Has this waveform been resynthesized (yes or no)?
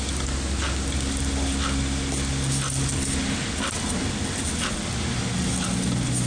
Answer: no